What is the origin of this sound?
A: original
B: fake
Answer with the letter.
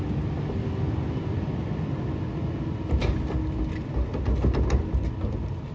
A